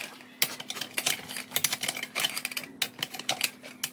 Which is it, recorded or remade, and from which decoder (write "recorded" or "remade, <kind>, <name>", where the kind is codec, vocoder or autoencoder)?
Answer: recorded